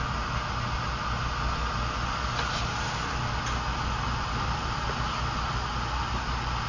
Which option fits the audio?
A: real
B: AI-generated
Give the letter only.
A